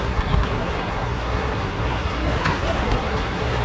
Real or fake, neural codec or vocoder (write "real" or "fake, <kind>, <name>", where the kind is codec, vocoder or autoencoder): fake, codec, SNAC